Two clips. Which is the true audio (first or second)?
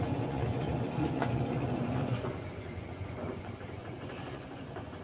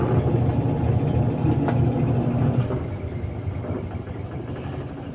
second